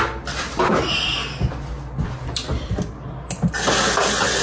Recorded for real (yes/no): yes